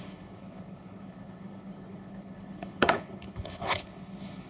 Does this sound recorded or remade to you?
remade